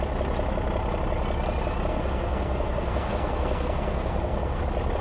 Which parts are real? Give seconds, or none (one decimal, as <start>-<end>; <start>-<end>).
0.0-1.9; 4.6-5.0